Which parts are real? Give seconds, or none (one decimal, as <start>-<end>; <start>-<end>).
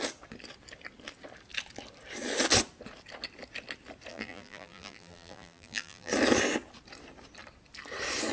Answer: 0.0-4.1; 6.1-8.3